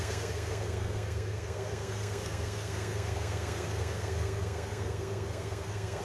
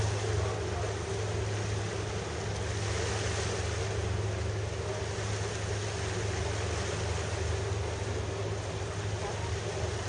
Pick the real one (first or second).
second